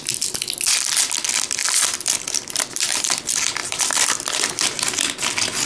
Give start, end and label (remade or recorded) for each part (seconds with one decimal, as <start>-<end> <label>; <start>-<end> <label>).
0.0-1.6 recorded; 1.6-3.0 remade; 3.0-3.6 recorded; 3.6-4.5 remade; 4.5-5.7 recorded